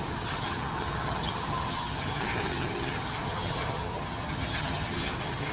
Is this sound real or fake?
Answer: fake